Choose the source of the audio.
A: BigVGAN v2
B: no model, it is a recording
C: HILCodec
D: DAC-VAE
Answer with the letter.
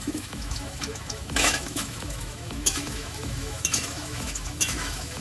D